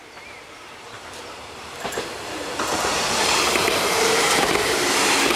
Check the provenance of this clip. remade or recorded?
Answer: remade